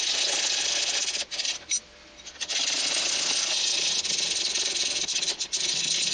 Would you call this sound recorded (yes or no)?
yes